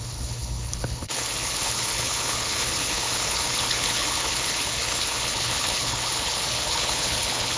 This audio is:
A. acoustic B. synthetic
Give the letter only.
B